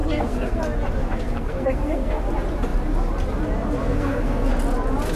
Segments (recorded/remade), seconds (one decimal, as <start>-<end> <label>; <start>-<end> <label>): 0.0-0.6 remade; 0.6-1.0 recorded; 1.0-2.3 remade; 2.3-3.8 recorded; 3.8-4.5 remade; 4.5-5.2 recorded